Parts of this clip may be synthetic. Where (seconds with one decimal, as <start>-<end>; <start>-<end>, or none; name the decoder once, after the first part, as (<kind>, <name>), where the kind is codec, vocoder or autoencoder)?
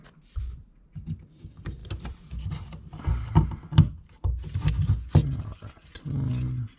none